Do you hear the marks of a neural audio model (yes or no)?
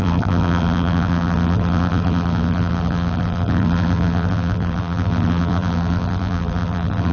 yes